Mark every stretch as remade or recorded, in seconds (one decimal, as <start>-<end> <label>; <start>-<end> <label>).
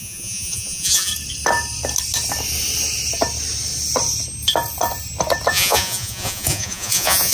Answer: 0.0-1.1 remade; 1.1-5.5 recorded; 5.5-7.3 remade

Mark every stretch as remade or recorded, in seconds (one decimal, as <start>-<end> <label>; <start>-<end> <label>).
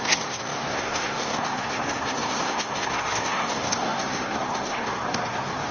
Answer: 0.0-5.7 remade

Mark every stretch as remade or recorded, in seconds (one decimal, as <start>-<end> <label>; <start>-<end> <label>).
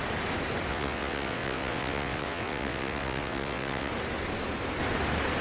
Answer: 0.0-0.7 recorded; 0.7-3.9 remade; 3.9-5.4 recorded